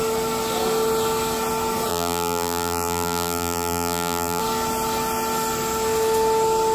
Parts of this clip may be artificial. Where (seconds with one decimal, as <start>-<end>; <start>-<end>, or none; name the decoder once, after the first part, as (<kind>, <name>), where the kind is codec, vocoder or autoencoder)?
1.9-4.4 (vocoder, BigVGAN v2)